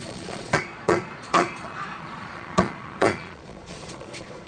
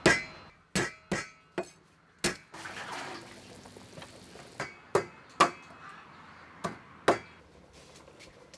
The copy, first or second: first